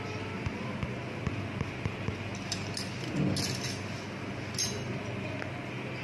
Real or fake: real